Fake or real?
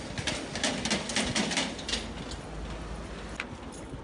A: real